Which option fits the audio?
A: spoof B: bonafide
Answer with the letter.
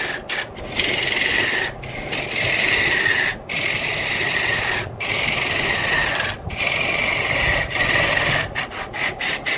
B